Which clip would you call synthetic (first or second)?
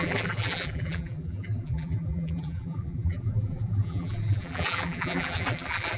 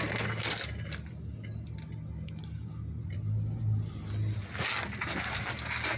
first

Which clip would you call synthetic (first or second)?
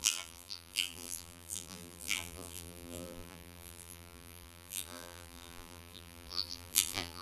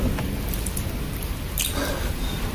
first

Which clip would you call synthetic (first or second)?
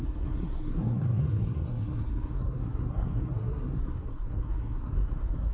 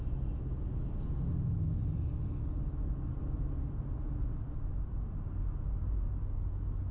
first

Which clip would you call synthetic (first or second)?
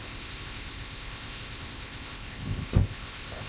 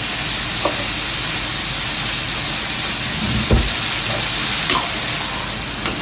first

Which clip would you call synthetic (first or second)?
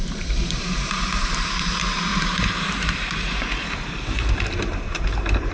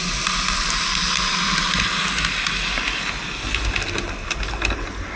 first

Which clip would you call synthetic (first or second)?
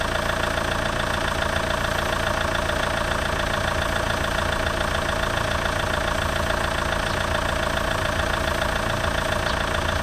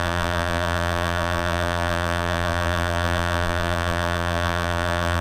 second